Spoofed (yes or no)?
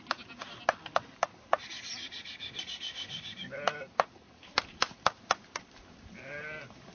no